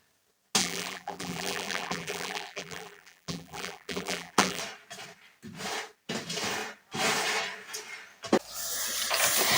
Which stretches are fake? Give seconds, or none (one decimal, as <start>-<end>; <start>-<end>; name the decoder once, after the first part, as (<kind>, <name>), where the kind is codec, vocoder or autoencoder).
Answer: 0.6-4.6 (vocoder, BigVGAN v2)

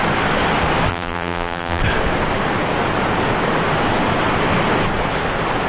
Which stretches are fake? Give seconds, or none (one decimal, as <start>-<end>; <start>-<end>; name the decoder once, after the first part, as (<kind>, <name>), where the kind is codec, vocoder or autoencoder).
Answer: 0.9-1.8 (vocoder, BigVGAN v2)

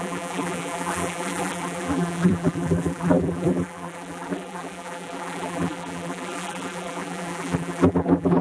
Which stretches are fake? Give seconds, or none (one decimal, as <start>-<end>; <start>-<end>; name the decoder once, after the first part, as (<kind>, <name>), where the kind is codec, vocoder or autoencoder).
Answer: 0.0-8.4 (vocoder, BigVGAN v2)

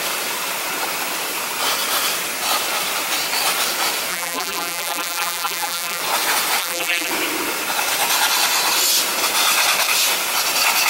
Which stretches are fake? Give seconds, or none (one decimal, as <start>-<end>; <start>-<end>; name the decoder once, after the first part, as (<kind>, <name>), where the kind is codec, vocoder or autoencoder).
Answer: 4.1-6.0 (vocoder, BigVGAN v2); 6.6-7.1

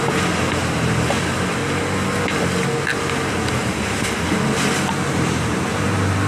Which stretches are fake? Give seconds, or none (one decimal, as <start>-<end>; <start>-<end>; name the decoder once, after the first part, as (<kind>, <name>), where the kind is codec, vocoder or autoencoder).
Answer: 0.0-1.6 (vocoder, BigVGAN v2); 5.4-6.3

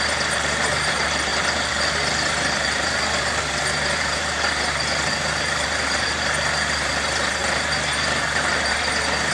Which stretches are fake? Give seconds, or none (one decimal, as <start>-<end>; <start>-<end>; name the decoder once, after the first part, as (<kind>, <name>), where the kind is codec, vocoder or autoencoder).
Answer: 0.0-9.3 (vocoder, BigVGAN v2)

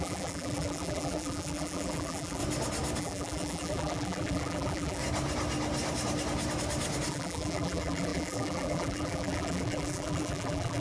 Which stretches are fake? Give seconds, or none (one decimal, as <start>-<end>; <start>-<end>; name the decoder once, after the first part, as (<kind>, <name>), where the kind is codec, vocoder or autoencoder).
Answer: 0.0-2.4 (vocoder, BigVGAN v2); 3.0-5.0; 7.1-10.8

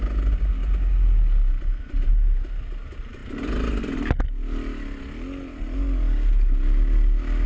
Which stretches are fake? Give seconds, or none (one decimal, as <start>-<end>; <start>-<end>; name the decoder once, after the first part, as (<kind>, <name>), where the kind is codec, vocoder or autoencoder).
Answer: none